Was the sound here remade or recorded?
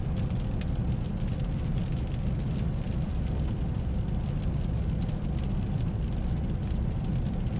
recorded